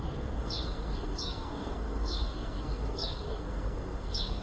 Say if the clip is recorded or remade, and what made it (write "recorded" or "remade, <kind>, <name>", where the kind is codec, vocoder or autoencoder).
remade, codec, SNAC